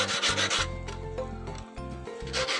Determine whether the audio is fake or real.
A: real